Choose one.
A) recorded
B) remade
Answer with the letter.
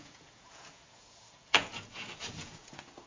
B